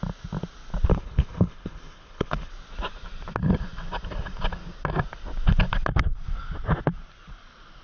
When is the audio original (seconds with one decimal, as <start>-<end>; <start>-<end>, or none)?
0.0-0.9; 2.5-7.8